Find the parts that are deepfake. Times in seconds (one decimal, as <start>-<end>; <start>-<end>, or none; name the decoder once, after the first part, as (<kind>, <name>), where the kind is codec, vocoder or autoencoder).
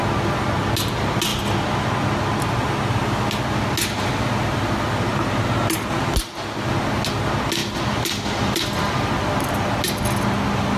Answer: 7.6-9.8 (vocoder, BigVGAN v2)